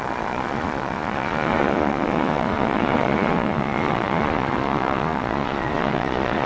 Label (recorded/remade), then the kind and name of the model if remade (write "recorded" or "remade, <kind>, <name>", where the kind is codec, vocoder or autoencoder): remade, vocoder, Vocos